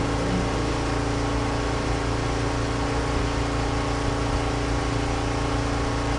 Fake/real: real